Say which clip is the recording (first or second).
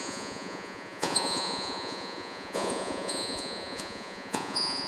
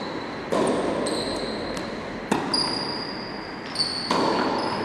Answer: second